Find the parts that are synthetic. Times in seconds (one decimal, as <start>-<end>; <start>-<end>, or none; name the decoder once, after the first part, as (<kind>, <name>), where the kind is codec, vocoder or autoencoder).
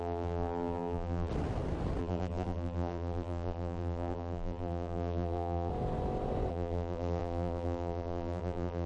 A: 0.0-1.3 (vocoder, BigVGAN v2); 2.0-5.7; 6.5-8.9